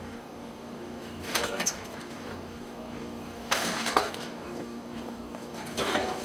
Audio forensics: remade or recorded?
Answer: remade